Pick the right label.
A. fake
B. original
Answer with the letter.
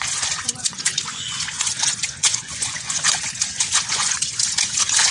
A